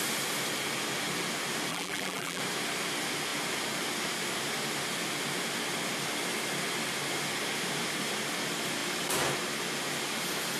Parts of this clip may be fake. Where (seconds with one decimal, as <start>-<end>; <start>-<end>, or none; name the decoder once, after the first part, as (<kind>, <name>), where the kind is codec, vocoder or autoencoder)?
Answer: 1.7-2.4 (vocoder, BigVGAN v2)